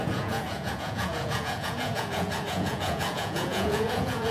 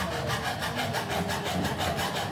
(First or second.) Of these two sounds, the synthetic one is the first